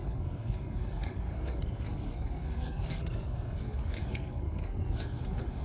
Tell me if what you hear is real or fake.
fake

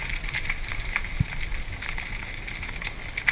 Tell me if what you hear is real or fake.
real